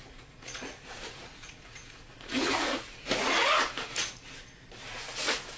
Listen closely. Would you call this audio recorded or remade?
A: remade